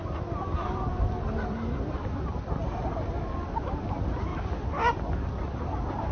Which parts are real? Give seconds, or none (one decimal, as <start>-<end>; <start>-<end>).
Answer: 2.6-3.2; 4.3-6.1